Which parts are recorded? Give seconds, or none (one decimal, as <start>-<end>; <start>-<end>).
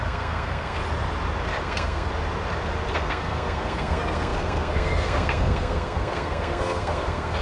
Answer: 0.8-1.6; 2.1-2.9